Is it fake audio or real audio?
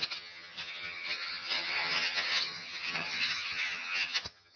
fake